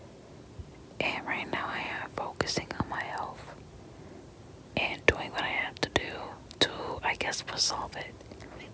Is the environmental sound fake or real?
real